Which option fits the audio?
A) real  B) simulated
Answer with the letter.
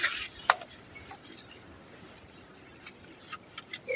B